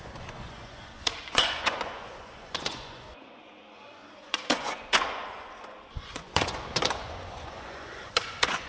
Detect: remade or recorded remade